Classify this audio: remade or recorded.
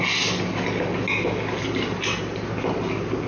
recorded